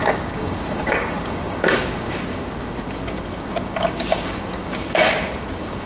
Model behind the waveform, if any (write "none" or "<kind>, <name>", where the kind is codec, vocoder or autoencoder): codec, DAC